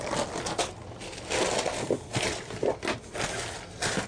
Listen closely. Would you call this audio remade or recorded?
recorded